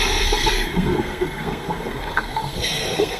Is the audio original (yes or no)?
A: no